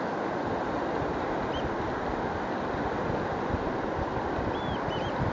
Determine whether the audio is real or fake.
real